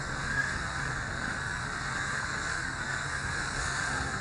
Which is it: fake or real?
fake